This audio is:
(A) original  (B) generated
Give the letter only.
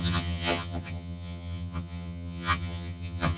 B